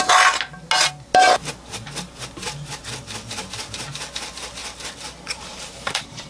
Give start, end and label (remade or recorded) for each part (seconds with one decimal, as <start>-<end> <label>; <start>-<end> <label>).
0.0-4.6 recorded; 4.6-6.3 remade